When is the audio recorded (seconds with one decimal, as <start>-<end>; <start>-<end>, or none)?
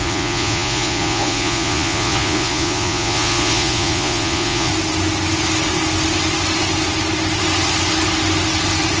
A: 4.7-9.0